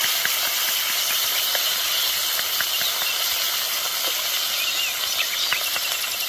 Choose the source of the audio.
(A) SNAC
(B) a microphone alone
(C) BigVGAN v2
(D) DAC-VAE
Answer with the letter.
B